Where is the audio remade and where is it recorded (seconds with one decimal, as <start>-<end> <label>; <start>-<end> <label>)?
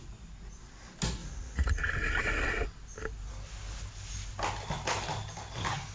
0.0-1.2 recorded; 1.2-1.8 remade; 1.8-5.9 recorded